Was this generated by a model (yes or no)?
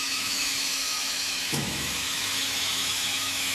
yes